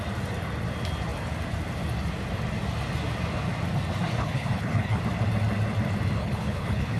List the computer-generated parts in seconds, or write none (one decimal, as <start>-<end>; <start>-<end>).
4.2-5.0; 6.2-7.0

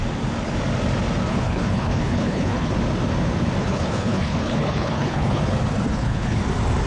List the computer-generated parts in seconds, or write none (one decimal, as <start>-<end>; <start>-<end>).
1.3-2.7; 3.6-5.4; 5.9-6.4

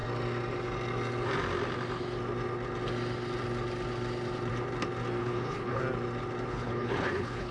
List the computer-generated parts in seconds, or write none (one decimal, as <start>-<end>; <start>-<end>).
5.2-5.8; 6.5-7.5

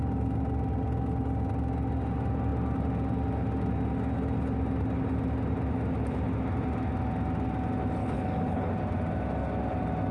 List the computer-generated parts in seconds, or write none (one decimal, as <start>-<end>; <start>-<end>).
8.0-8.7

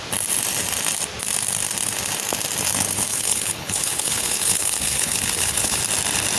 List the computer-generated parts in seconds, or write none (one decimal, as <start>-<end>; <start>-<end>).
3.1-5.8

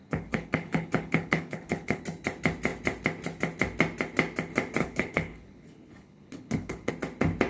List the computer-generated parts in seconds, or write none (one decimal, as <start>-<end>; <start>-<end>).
0.0-2.0; 4.8-6.9

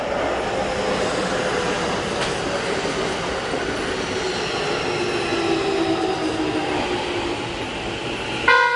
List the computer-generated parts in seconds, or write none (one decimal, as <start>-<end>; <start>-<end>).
none